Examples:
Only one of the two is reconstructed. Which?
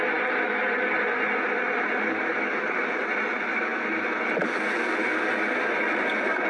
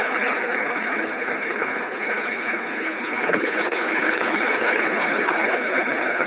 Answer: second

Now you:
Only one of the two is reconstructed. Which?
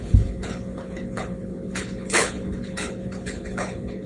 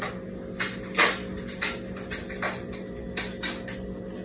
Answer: first